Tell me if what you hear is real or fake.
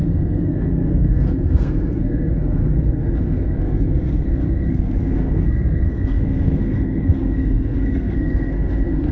fake